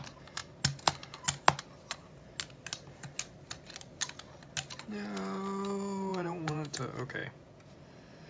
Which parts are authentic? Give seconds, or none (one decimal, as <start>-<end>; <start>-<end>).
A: 0.0-6.1; 6.8-7.2; 7.7-8.3